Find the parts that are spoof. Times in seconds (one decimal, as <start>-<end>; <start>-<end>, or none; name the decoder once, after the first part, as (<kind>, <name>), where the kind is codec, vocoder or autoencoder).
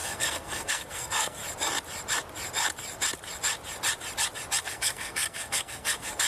0.0-1.4 (codec, SNAC); 4.6-6.3